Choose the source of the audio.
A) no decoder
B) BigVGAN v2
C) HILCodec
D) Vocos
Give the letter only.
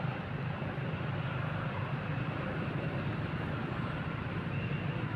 A